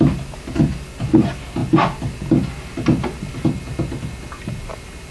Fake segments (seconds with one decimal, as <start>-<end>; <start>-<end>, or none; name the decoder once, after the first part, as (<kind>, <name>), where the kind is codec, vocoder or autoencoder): none